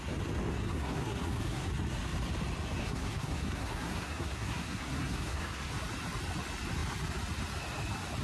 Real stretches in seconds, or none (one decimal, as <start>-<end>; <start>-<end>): 0.0-0.5; 1.7-2.8; 5.7-8.2